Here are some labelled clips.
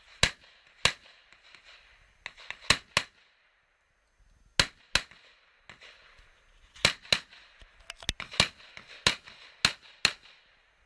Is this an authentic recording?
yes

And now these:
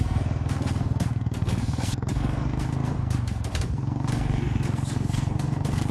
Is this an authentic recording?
no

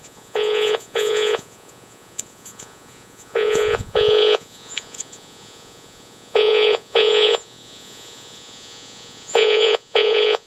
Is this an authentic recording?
no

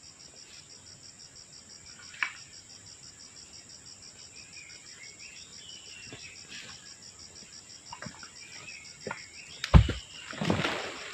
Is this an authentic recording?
yes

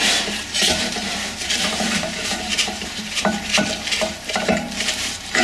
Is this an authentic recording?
no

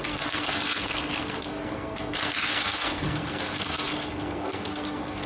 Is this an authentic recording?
no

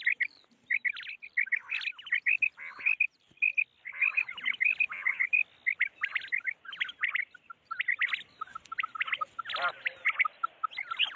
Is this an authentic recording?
yes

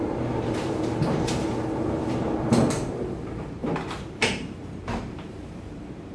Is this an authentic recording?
no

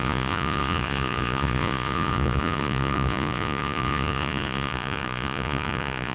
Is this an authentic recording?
no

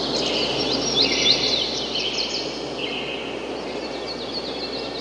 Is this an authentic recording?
yes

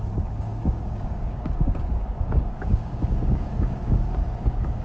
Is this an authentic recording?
no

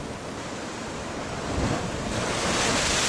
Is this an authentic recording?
yes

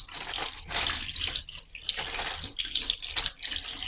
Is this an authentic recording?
yes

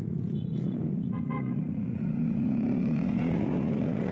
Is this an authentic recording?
no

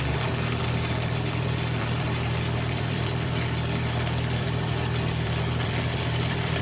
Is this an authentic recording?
no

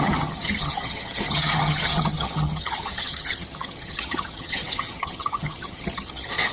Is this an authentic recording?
no